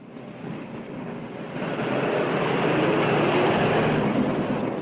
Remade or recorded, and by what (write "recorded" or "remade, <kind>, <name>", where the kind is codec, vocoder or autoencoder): recorded